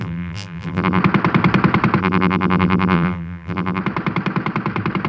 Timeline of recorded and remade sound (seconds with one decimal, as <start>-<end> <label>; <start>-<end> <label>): 0.0-1.0 remade; 1.0-2.0 recorded; 2.0-3.8 remade; 3.8-5.1 recorded